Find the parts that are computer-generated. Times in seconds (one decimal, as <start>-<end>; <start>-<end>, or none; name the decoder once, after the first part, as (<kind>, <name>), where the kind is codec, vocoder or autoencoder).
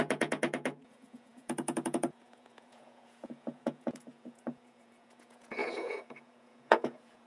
0.0-7.3 (vocoder, Vocos)